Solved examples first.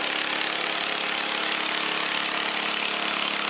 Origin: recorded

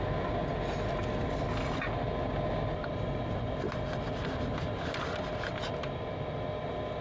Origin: recorded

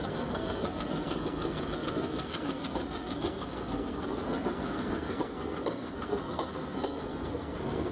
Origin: remade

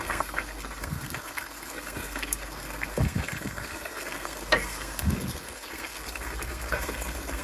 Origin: remade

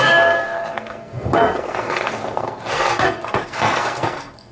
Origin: remade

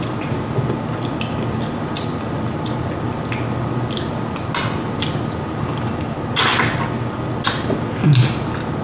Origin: recorded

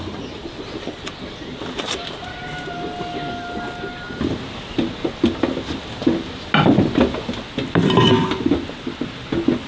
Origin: recorded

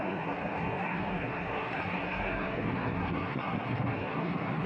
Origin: remade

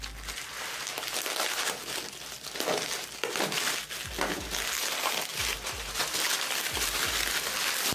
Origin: recorded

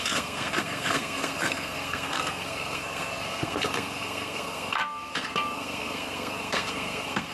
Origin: remade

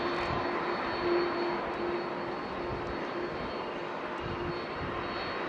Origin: recorded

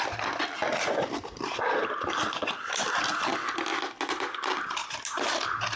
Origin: recorded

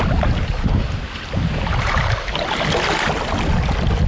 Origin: recorded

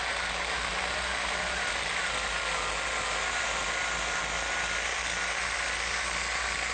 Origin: recorded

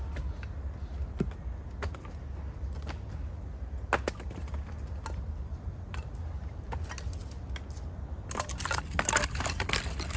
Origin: recorded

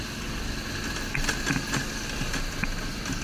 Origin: recorded